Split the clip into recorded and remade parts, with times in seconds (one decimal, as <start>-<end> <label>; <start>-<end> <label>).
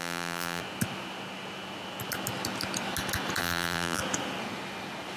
0.0-0.6 remade; 0.6-3.4 recorded; 3.4-4.0 remade; 4.0-5.2 recorded